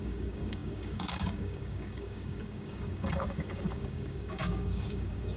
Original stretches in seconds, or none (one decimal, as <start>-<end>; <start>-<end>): none